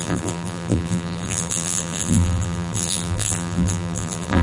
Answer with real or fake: fake